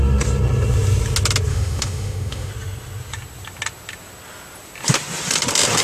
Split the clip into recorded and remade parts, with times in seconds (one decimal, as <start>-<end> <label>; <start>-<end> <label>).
0.0-1.5 recorded; 1.5-2.5 remade; 2.5-5.8 recorded